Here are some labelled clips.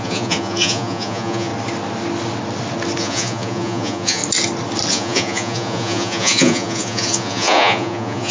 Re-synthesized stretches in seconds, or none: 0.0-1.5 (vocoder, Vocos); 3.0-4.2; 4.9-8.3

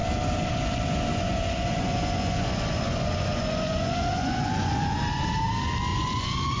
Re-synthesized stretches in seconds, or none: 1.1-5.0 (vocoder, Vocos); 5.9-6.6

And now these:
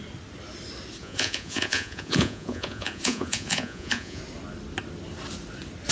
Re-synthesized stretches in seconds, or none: 1.0-4.2 (vocoder, Vocos)

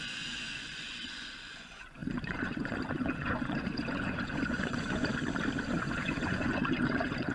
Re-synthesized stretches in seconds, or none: 0.0-5.1 (vocoder, Vocos); 5.6-7.3

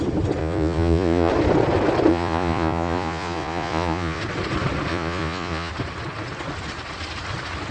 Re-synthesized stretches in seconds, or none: 0.4-1.3 (vocoder, Vocos); 2.1-4.2; 4.9-5.7